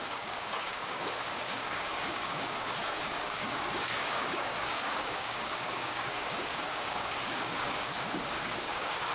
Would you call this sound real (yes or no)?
no